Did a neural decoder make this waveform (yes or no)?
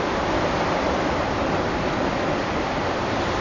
no